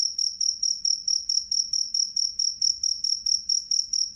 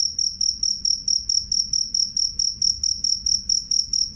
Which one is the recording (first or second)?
second